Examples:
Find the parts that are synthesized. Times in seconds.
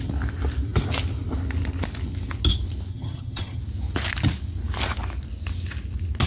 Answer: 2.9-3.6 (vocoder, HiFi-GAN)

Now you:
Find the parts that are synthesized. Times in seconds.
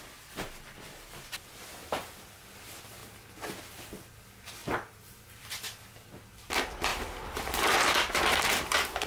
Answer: 1.8-2.4 (vocoder, BigVGAN v2); 6.9-9.1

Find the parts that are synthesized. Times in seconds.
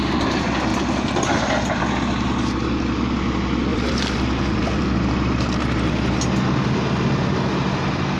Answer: 0.7-1.8 (vocoder, BigVGAN v2); 3.7-5.0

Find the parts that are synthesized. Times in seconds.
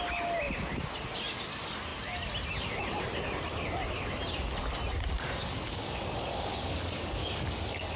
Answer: 5.4-8.0 (codec, DAC)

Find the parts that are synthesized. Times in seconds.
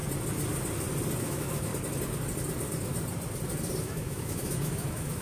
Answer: 1.2-1.7 (autoencoder, DAC-VAE); 3.8-5.2